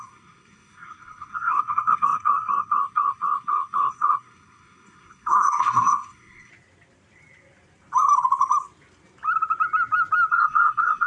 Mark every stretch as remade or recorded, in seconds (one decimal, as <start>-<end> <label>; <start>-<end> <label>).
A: 0.0-6.5 remade; 6.5-10.3 recorded; 10.3-11.1 remade